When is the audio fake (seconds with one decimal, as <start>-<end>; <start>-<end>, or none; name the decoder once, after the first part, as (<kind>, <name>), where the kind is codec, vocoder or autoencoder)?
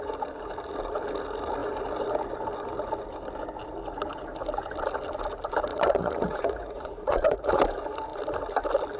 5.7-7.6 (vocoder, Vocos)